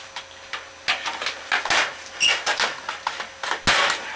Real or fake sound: real